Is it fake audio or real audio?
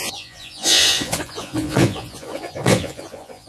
fake